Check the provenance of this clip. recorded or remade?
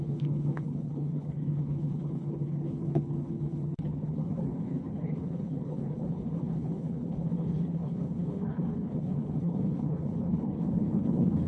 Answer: remade